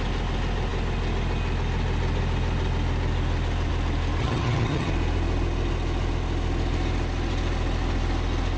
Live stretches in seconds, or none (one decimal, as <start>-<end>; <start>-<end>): 0.0-4.2; 4.9-8.6